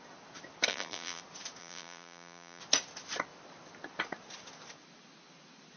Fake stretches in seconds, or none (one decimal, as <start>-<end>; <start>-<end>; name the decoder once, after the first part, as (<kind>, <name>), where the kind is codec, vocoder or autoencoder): 0.7-1.2 (vocoder, BigVGAN v2); 1.6-2.6